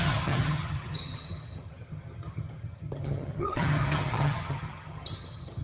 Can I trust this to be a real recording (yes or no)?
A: no